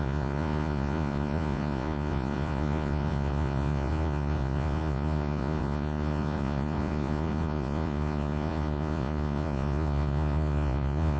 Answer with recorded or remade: remade